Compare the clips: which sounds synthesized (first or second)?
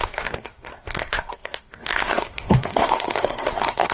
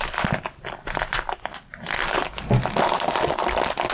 first